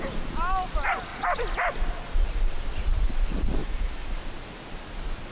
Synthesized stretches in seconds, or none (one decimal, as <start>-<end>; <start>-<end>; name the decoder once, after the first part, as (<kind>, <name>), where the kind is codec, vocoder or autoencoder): 3.6-4.2 (autoencoder, DAC-VAE)